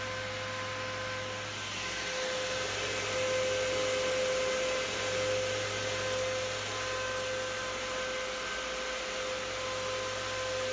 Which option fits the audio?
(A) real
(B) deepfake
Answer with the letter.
A